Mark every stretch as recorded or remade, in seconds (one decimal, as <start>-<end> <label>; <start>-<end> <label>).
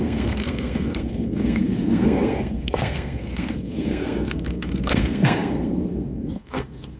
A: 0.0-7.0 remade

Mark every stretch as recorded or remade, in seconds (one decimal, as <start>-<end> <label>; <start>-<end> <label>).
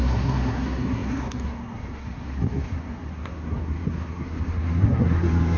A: 0.0-5.6 remade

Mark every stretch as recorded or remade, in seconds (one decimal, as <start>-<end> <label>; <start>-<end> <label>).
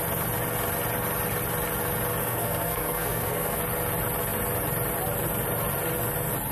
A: 0.0-2.2 recorded; 2.2-3.6 remade; 3.6-6.5 recorded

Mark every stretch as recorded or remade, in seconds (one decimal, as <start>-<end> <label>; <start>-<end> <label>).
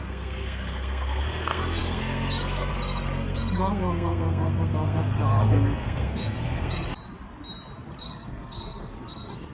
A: 0.0-6.9 remade; 6.9-8.0 recorded; 8.0-9.5 remade